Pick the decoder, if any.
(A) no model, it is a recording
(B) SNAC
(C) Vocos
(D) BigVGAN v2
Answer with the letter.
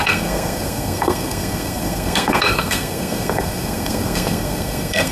B